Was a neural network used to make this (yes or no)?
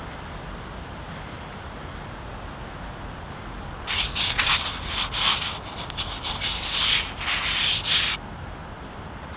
no